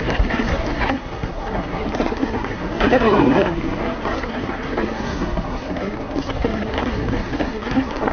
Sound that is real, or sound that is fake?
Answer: fake